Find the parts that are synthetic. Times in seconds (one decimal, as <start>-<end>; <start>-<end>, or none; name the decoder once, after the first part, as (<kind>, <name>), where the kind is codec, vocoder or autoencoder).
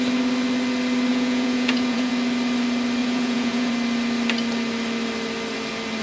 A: 1.1-2.1 (vocoder, Vocos); 3.0-3.7